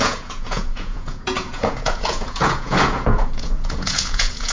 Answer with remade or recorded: remade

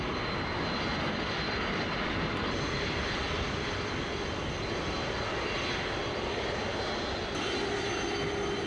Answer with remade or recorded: recorded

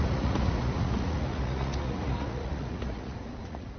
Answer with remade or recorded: remade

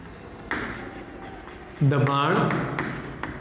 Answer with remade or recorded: recorded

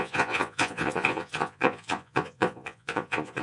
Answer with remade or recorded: remade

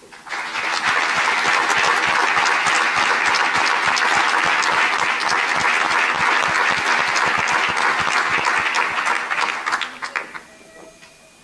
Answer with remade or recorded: recorded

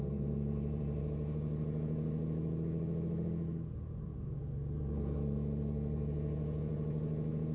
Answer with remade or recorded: remade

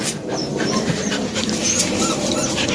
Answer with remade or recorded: recorded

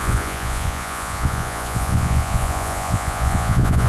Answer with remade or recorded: remade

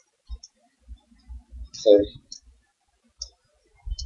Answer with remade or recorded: recorded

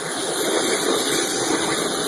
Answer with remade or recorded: recorded